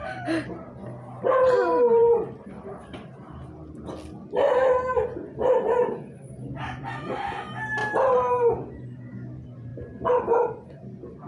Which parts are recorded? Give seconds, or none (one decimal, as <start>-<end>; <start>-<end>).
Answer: 0.0-1.7; 3.5-7.8; 8.5-9.7